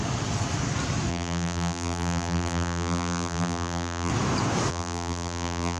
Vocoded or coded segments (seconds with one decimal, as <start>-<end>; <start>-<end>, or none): 1.1-4.1; 4.7-5.8